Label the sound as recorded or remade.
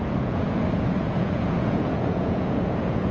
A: remade